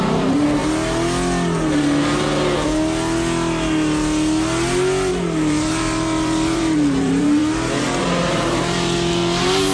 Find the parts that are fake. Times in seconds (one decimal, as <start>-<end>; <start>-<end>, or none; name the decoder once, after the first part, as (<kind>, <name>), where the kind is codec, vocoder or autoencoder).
0.0-0.6 (vocoder, BigVGAN v2); 5.1-7.4; 8.0-9.7